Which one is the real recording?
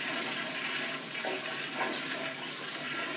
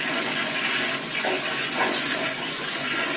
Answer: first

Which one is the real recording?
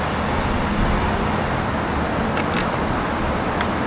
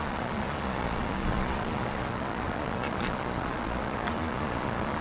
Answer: first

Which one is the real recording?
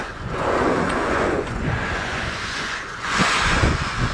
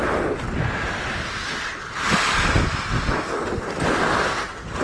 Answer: second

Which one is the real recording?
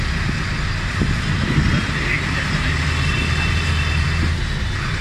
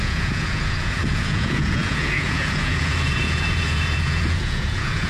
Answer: first